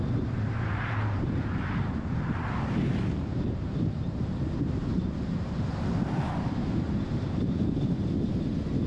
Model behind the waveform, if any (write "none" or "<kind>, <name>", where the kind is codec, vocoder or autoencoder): vocoder, BigVGAN v2